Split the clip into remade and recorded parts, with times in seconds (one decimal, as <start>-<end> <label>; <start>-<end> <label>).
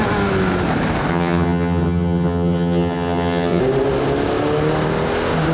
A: 0.0-1.1 recorded; 1.1-3.6 remade; 3.6-5.5 recorded